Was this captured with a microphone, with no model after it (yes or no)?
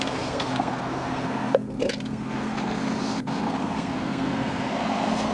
no